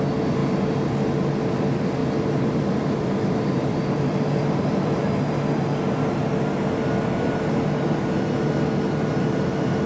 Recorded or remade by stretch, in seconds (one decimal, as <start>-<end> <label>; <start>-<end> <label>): 0.0-2.0 recorded; 2.0-5.2 remade; 5.2-9.9 recorded